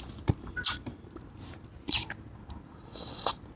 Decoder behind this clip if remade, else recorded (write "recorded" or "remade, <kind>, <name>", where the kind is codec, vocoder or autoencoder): recorded